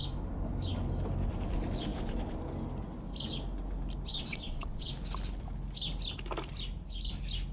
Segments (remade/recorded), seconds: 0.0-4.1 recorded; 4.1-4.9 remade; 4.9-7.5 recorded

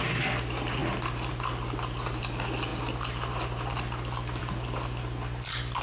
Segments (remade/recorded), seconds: 0.0-5.8 recorded